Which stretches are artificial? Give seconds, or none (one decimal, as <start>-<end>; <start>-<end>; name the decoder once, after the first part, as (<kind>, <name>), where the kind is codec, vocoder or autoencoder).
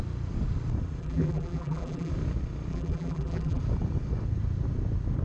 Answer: 1.0-2.1 (vocoder, BigVGAN v2); 2.7-3.6